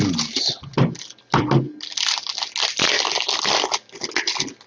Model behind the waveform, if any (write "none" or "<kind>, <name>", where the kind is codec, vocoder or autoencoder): none